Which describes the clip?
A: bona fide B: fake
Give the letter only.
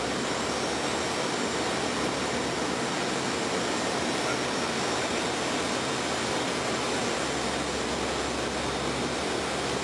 A